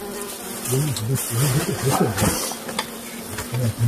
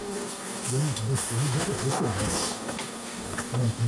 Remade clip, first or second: second